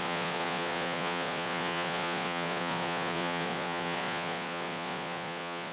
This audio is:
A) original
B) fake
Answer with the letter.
B